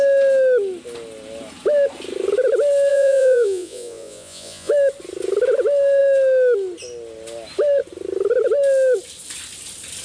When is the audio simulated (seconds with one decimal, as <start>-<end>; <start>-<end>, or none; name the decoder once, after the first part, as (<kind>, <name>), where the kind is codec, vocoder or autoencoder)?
2.9-4.7 (vocoder, Vocos)